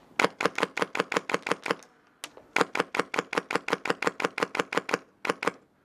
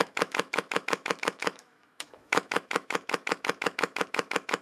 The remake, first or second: second